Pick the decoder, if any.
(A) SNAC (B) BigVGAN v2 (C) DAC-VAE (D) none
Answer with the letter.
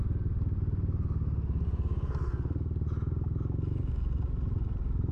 D